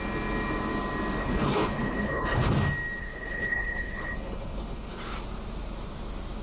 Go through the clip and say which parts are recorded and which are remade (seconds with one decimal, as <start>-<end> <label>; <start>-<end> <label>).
0.0-1.2 recorded; 1.2-2.5 remade; 2.5-3.0 recorded; 3.0-5.0 remade; 5.0-6.4 recorded